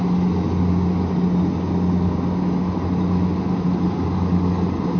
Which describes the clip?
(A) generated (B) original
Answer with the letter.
B